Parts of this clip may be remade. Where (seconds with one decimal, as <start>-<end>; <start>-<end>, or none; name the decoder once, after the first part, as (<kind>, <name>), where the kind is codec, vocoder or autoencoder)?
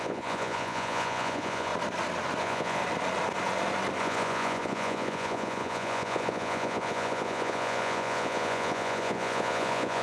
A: 0.0-1.7 (vocoder, Vocos); 2.4-2.8; 4.0-10.0